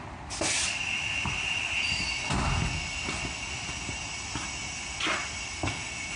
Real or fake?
real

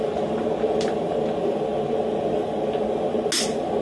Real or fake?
real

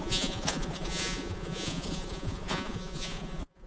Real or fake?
fake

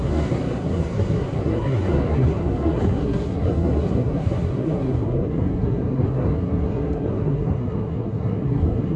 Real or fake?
fake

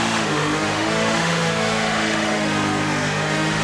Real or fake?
fake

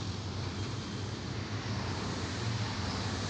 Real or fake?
real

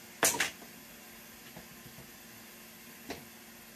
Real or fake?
real